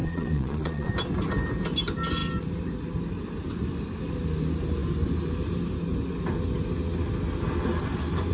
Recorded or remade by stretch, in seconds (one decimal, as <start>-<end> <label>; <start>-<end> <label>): 0.0-0.9 remade; 0.9-8.3 recorded